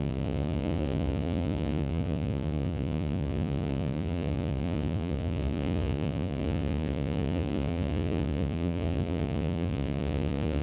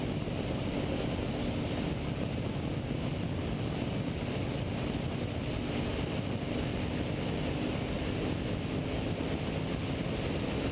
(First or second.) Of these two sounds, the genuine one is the second